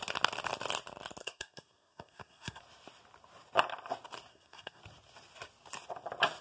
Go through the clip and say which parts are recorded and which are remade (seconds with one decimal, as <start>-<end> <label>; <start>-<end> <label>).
0.0-1.2 recorded; 1.2-2.6 remade; 2.6-4.3 recorded; 4.3-4.8 remade; 4.8-6.4 recorded